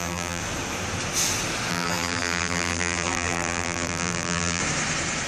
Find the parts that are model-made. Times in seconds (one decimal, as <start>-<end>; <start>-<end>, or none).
0.0-0.4; 1.7-4.6